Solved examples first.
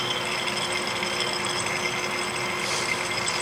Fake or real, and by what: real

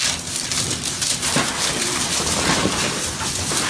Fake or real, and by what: real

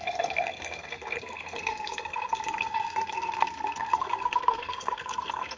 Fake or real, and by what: fake, codec, SNAC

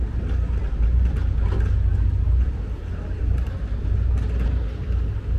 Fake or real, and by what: real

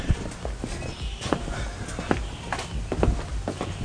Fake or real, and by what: real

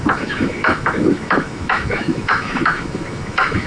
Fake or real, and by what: fake, autoencoder, DAC-VAE